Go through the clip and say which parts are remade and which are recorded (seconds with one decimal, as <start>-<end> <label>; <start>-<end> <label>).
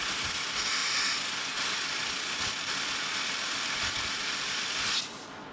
0.0-5.5 recorded